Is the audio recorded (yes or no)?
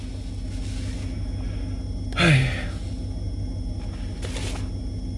yes